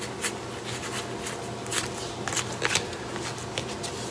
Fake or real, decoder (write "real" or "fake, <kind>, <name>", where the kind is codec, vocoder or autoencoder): real